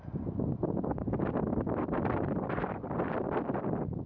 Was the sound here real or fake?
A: real